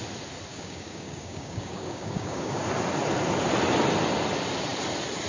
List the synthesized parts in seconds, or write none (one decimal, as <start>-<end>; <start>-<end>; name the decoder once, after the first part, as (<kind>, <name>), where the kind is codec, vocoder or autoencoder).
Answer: 0.5-2.7 (codec, DAC)